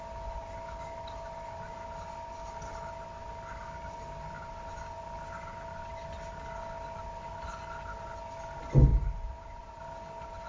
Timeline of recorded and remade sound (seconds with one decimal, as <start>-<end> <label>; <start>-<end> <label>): 0.0-8.9 recorded; 8.9-9.8 remade; 9.8-10.5 recorded